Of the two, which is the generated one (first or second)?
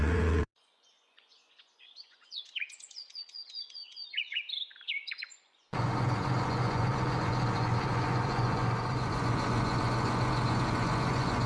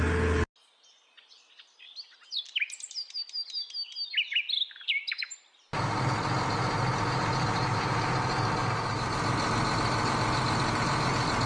first